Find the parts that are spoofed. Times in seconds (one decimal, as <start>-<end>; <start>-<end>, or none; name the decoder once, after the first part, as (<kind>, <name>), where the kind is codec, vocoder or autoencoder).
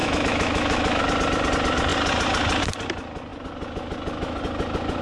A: 0.0-1.0 (autoencoder, DAC-VAE)